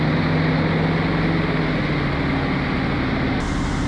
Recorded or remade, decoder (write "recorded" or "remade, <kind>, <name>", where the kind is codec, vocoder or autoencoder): recorded